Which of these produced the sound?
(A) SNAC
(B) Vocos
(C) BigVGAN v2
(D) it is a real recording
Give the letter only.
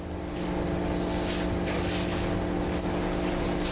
D